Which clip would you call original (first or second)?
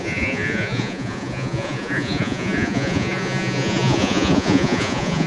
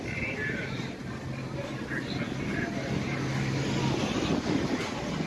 second